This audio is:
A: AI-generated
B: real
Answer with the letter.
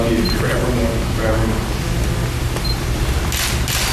B